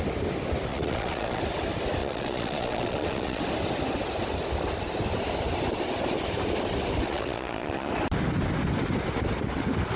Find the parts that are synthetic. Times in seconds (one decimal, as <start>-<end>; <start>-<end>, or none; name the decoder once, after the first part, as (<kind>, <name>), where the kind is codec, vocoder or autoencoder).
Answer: 0.7-1.4 (vocoder, Vocos); 2.0-3.4; 7.1-7.9